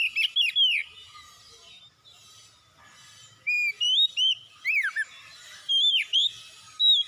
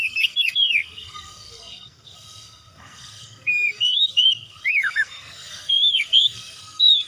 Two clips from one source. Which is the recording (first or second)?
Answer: first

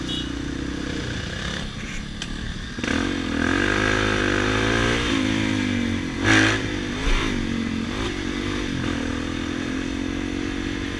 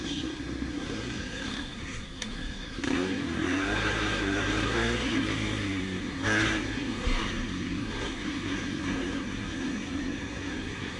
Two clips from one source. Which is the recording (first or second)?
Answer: first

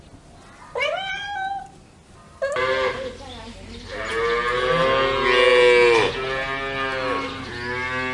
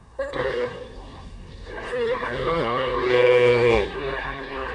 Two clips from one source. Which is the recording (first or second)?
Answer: first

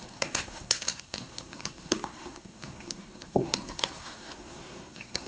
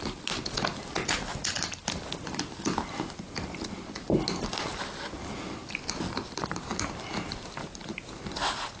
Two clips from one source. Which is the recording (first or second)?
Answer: second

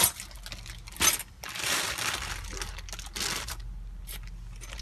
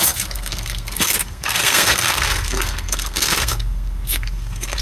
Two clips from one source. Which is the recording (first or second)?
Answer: first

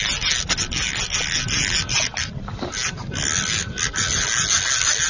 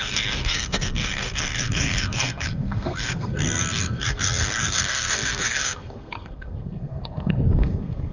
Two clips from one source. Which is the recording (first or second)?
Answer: first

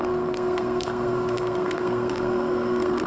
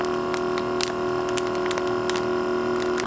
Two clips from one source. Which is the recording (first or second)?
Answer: second